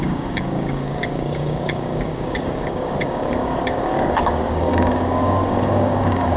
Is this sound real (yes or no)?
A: no